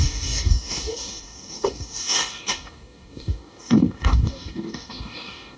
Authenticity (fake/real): fake